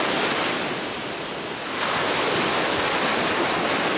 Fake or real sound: real